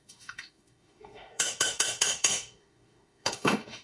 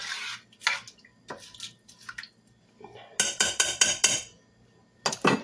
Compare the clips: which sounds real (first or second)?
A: second